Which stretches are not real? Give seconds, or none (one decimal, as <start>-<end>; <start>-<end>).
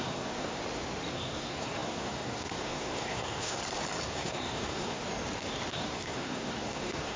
0.0-0.6; 1.1-3.6; 4.1-5.0; 5.7-7.2